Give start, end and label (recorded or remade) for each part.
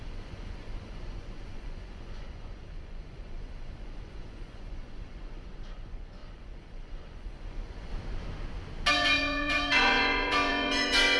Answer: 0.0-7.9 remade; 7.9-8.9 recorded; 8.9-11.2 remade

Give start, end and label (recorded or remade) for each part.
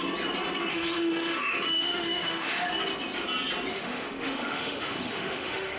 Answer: 0.0-0.7 recorded; 0.7-2.7 remade; 2.7-3.7 recorded; 3.7-5.8 remade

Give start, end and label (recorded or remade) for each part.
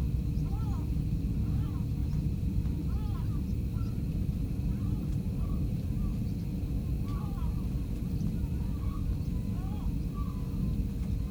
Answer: 0.0-2.0 recorded; 2.0-5.9 remade; 5.9-7.1 recorded; 7.1-9.3 remade; 9.3-11.3 recorded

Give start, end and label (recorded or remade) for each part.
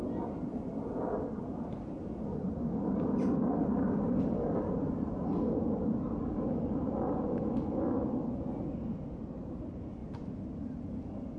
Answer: 0.0-11.4 recorded